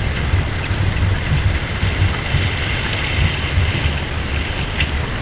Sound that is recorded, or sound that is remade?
recorded